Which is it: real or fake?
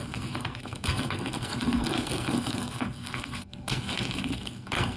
fake